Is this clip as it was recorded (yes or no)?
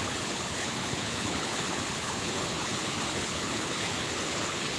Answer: no